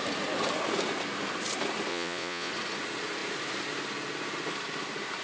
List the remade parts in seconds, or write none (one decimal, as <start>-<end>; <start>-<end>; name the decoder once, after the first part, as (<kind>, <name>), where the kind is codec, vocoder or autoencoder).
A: 1.9-2.5 (vocoder, Vocos)